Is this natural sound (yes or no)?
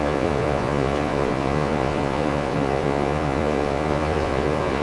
no